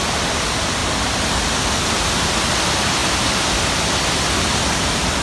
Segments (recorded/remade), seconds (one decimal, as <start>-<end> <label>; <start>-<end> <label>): 0.0-5.2 recorded